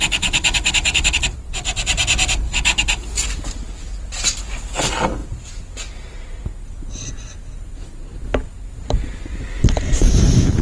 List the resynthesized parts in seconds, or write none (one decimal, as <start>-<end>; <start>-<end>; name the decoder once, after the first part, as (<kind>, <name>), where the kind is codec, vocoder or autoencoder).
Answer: none